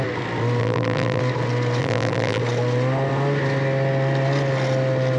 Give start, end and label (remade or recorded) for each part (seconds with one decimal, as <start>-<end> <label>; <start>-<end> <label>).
0.0-0.6 recorded; 0.6-1.2 remade; 1.2-1.8 recorded; 1.8-2.4 remade; 2.4-5.2 recorded